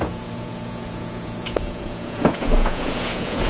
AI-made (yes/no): yes